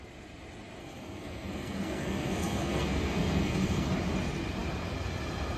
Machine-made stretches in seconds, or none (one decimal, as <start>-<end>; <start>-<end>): 0.8-3.9